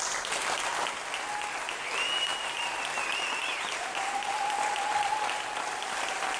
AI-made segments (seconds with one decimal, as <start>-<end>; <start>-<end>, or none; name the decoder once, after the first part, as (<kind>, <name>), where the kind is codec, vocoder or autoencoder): 3.4-4.3 (vocoder, BigVGAN v2)